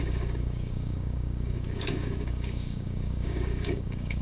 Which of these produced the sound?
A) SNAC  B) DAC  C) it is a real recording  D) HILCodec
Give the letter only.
B